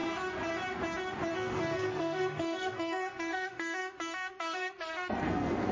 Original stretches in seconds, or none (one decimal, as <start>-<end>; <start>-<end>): 0.0-1.3